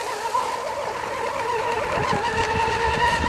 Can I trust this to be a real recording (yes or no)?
yes